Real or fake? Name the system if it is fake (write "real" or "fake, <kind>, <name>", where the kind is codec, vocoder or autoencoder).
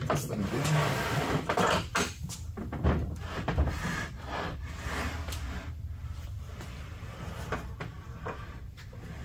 real